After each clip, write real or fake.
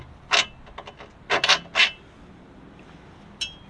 real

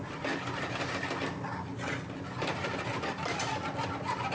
real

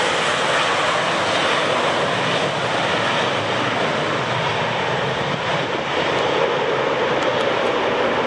real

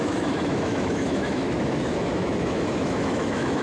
fake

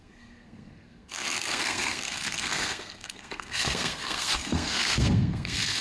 fake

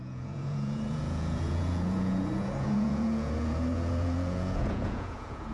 fake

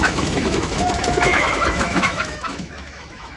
fake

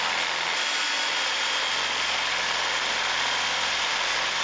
real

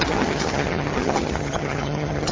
fake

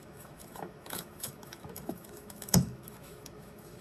fake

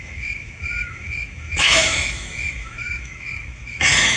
fake